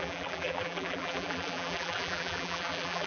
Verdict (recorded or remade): remade